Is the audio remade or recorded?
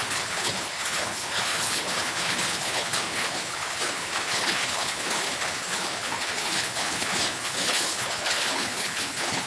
remade